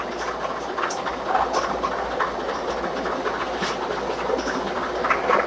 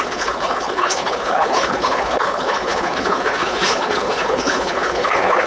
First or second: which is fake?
second